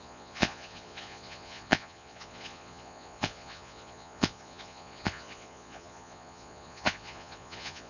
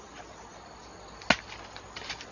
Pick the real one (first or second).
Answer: second